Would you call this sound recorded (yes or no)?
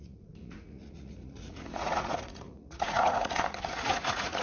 no